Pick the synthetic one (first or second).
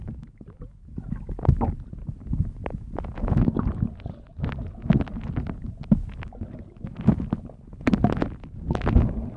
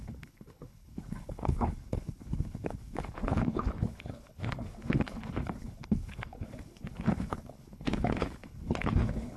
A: second